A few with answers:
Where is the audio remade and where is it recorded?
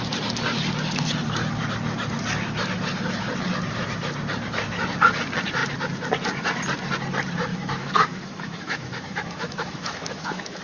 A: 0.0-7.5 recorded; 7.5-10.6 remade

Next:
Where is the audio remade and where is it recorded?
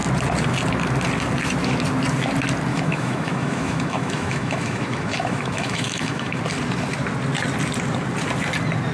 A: 0.0-2.7 recorded; 2.7-6.4 remade; 6.4-8.9 recorded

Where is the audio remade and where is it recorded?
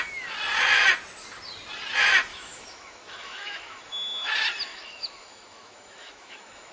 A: 0.0-2.3 recorded; 2.3-4.3 remade; 4.3-4.7 recorded; 4.7-6.7 remade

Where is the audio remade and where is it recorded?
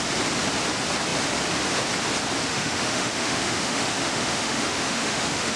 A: 0.0-2.5 recorded; 2.5-5.6 remade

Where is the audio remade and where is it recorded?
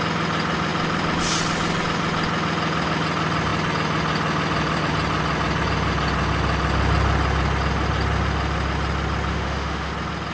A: 0.0-9.3 recorded; 9.3-9.9 remade; 9.9-10.3 recorded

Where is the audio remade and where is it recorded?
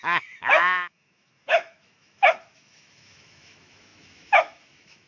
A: 0.0-5.1 remade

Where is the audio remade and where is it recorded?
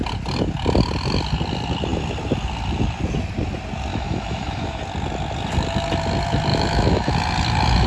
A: 0.0-3.9 recorded; 3.9-4.8 remade; 4.8-6.5 recorded; 6.5-7.1 remade; 7.1-7.9 recorded